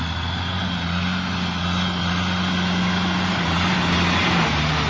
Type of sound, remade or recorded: recorded